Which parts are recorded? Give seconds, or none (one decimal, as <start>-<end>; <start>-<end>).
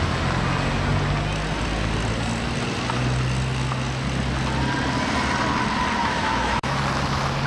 0.0-6.0; 6.8-7.5